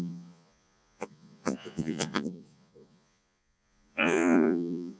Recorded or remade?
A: remade